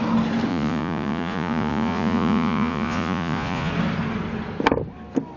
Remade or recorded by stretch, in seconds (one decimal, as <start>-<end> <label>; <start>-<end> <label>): 0.0-0.5 recorded; 0.5-3.7 remade; 3.7-5.4 recorded